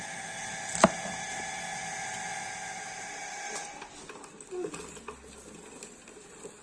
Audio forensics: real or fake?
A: real